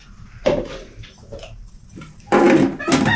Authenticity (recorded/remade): recorded